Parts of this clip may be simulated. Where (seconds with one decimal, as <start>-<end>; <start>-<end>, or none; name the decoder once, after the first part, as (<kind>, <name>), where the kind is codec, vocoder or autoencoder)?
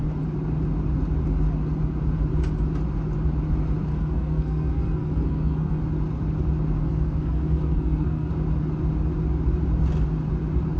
3.9-5.8 (codec, SNAC); 6.8-8.3